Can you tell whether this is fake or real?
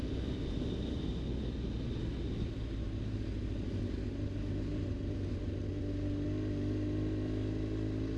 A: real